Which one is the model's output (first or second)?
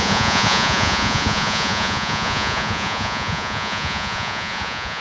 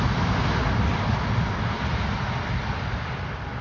first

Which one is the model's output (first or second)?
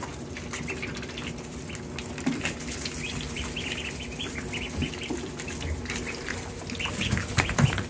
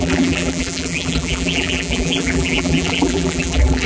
second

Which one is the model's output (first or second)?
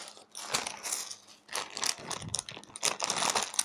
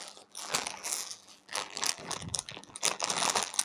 second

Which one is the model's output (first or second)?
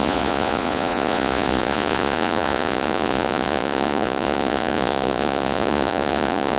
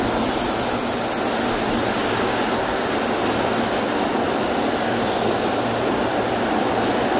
first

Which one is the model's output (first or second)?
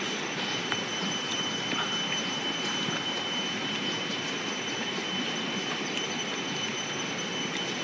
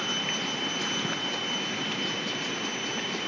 first